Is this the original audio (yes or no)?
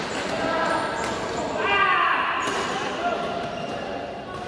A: yes